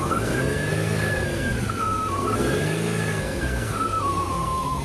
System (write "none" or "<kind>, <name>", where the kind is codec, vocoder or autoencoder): codec, SNAC